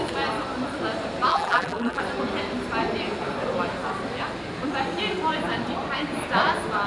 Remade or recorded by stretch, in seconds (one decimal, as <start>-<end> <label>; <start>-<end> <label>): 0.0-1.3 recorded; 1.3-2.0 remade; 2.0-6.9 recorded